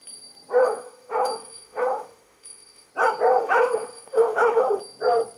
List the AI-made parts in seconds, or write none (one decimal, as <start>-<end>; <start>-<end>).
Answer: 0.6-2.9; 3.3-4.8

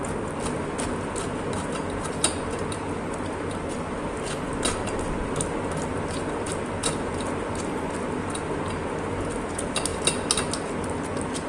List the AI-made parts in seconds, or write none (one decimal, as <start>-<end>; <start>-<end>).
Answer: none

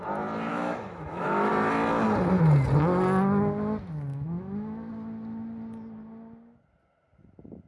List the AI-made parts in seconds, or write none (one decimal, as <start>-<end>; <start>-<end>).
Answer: 0.5-1.5; 4.1-4.9

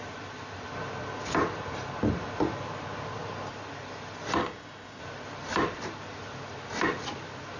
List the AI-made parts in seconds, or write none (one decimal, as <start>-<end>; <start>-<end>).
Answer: 4.4-5.0